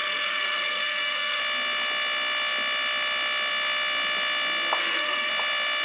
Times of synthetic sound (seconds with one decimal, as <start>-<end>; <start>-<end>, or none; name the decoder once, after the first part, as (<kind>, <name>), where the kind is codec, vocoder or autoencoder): 0.0-1.4 (codec, SNAC); 4.8-5.3